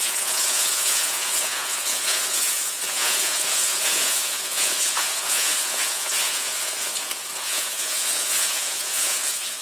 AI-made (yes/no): yes